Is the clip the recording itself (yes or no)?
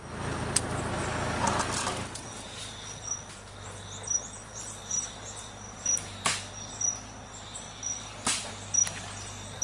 yes